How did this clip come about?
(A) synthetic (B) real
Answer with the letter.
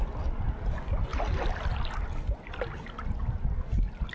B